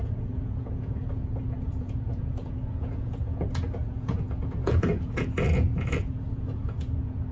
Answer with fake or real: fake